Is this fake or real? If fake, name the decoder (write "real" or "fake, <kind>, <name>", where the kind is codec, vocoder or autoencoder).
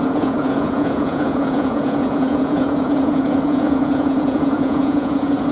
fake, vocoder, Vocos